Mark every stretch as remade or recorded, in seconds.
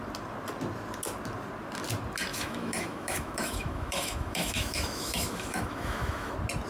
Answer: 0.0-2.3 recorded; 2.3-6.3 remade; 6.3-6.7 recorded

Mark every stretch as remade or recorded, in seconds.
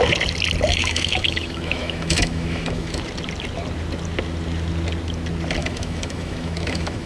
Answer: 0.0-0.7 recorded; 0.7-3.0 remade; 3.0-5.6 recorded; 5.6-7.1 remade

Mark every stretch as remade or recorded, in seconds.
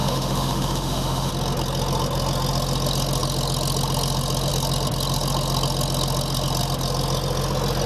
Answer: 0.0-1.3 remade; 1.3-7.9 recorded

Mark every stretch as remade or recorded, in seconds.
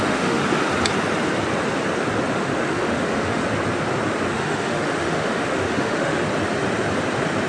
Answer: 0.0-0.4 remade; 0.4-2.3 recorded; 2.3-3.4 remade; 3.4-4.3 recorded; 4.3-6.2 remade; 6.2-7.5 recorded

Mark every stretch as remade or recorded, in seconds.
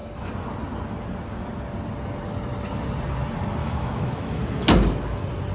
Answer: 0.0-3.6 recorded; 3.6-4.4 remade; 4.4-5.5 recorded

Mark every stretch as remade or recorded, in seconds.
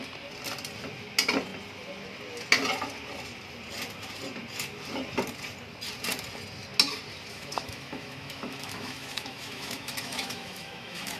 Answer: 0.0-7.3 recorded; 7.3-11.2 remade